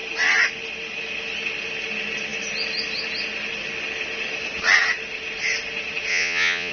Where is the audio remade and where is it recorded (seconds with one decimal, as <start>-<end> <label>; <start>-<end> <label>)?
0.0-6.1 recorded; 6.1-6.7 remade